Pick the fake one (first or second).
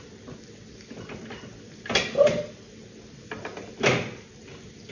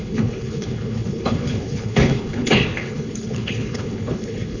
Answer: second